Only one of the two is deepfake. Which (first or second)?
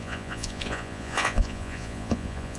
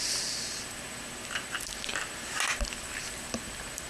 first